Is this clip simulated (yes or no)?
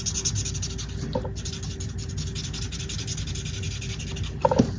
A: no